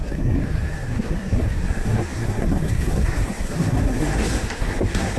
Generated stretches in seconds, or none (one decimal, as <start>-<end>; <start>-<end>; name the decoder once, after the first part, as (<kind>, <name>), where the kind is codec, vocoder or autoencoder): 0.0-5.2 (codec, SNAC)